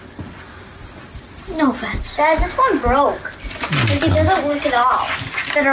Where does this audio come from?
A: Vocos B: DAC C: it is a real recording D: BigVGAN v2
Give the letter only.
C